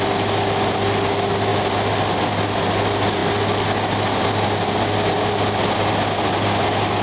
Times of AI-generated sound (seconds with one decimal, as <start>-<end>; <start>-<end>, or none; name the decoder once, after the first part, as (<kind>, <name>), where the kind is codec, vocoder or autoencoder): none